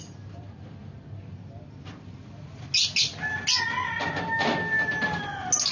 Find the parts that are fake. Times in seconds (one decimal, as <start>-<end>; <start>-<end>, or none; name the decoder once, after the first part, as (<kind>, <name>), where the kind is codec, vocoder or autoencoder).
none